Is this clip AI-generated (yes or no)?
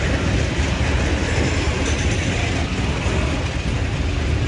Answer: no